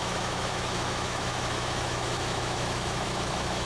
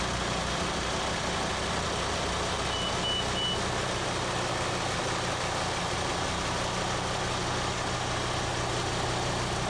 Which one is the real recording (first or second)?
second